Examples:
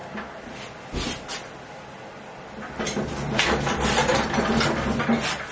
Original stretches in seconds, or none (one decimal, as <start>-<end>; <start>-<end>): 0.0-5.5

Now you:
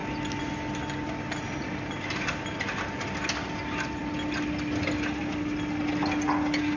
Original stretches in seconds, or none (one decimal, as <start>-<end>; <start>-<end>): 0.0-6.8

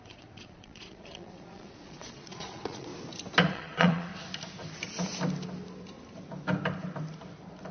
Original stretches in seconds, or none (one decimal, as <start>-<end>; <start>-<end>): 2.9-3.5; 4.1-7.7

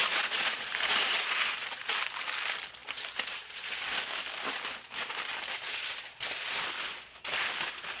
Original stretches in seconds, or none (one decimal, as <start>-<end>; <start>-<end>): 1.9-8.0

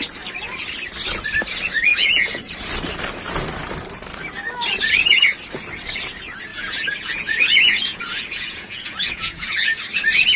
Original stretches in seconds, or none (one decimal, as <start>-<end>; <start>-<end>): 0.0-1.9; 2.5-6.5; 9.8-10.4

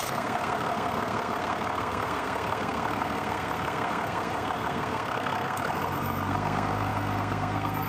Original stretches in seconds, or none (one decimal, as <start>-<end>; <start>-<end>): none

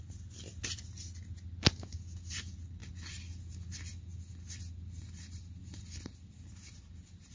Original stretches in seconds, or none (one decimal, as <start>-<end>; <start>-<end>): 0.0-7.3